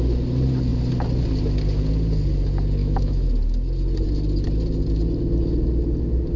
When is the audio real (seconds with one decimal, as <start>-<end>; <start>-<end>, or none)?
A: 0.0-2.8; 3.3-6.4

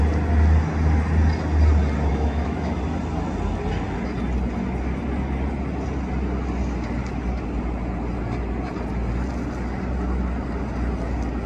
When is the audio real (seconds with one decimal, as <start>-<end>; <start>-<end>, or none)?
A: 0.0-2.1; 2.7-11.5

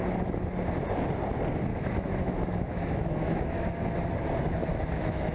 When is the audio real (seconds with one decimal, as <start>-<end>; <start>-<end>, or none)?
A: 0.0-1.7; 3.7-4.7

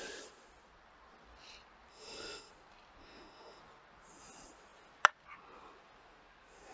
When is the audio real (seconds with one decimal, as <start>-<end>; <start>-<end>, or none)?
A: 0.0-1.9; 2.5-3.0; 3.6-6.7

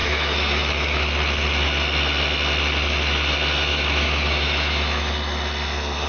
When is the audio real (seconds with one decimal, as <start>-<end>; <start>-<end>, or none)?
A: 1.1-3.7; 5.1-6.1

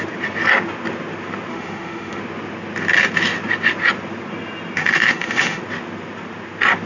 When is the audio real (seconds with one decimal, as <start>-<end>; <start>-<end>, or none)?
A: 0.0-1.5; 2.2-4.8; 5.6-6.9

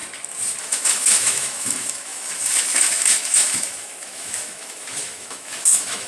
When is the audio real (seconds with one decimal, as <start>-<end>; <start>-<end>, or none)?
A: 0.0-0.6